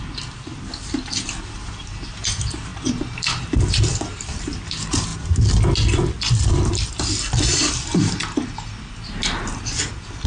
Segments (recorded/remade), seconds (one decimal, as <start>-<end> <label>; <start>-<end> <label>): 0.0-0.5 remade; 0.5-1.5 recorded; 1.5-5.1 remade; 5.1-10.3 recorded